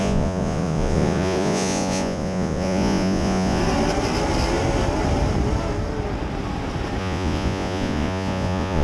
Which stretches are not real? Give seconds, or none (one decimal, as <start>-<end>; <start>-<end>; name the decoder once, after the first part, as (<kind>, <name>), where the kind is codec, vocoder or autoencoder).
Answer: 0.0-3.6 (vocoder, Vocos); 7.0-8.8